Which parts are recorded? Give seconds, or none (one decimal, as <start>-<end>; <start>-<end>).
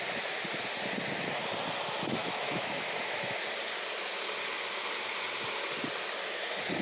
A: 0.0-2.2; 3.4-6.8